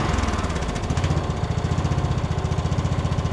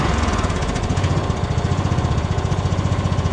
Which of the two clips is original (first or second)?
first